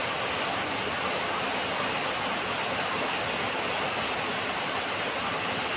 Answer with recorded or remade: recorded